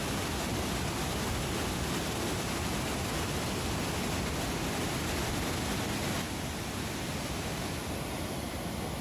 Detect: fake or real real